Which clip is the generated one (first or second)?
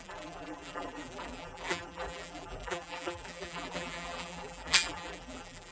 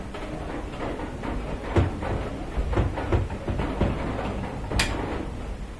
first